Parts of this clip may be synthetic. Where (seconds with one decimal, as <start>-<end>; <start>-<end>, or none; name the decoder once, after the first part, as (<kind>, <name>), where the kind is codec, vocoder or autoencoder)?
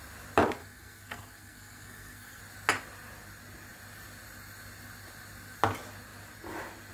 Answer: 0.6-2.4 (codec, SNAC)